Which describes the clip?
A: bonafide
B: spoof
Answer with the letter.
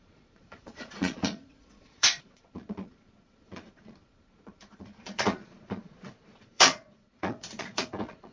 B